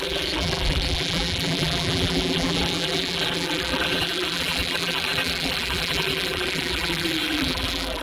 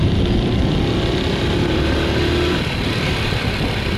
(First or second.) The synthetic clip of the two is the first